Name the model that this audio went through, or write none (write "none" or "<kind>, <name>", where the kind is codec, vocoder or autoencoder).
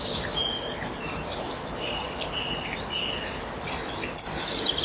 none